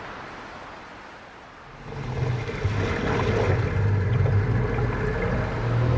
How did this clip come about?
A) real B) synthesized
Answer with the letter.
A